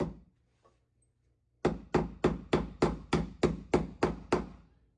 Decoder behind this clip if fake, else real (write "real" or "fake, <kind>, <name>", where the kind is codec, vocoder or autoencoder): real